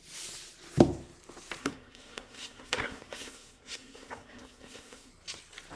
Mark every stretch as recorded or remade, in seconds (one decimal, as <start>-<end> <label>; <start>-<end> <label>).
0.0-1.6 recorded; 1.6-5.1 remade; 5.1-5.8 recorded